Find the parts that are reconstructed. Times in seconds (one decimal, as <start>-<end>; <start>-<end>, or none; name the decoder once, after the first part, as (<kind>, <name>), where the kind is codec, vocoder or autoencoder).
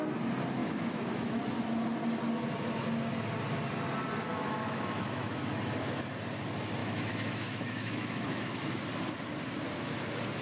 0.6-1.4 (autoencoder, DAC-VAE); 4.3-5.4; 6.8-8.8